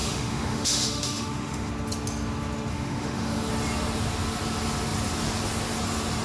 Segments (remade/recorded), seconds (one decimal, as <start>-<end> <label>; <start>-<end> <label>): 0.0-1.7 remade; 1.7-2.7 recorded; 2.7-3.5 remade; 3.5-6.2 recorded